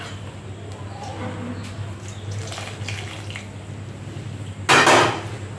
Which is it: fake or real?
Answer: real